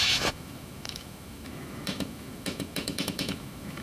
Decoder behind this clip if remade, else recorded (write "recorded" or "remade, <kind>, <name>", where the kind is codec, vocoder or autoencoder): remade, autoencoder, DAC-VAE